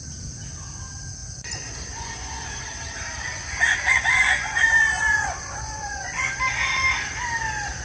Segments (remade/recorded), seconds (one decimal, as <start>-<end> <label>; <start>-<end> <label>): 0.0-1.2 recorded; 1.2-2.6 remade; 2.6-3.3 recorded; 3.3-6.4 remade; 6.4-7.8 recorded